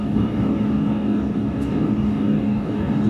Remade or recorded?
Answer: remade